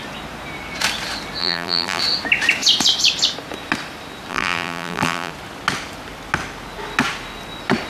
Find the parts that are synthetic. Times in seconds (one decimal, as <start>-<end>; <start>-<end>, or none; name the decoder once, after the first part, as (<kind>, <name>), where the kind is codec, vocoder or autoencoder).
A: 1.4-2.0 (vocoder, BigVGAN v2); 4.3-5.3